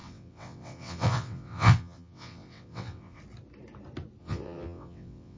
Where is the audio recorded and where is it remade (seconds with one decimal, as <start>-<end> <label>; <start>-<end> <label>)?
0.0-3.2 remade; 3.2-4.2 recorded; 4.2-5.4 remade